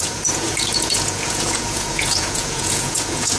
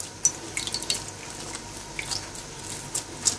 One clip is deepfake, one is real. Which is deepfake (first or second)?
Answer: first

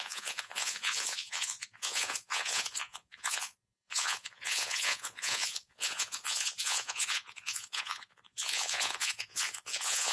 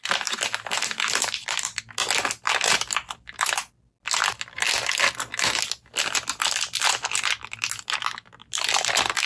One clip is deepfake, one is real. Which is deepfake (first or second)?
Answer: first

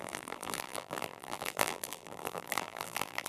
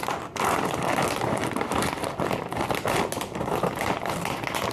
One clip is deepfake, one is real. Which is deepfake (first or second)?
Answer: first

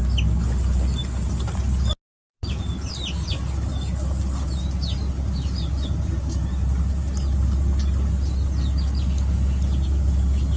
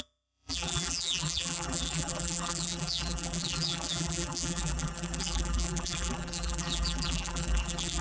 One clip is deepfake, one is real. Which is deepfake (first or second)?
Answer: second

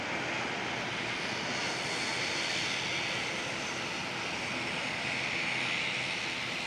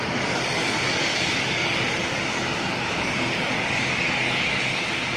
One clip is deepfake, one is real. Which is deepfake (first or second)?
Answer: second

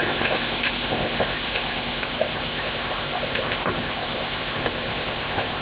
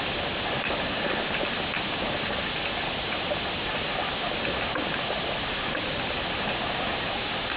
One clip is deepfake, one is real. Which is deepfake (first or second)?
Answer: first